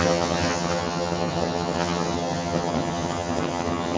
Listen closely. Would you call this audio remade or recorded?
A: remade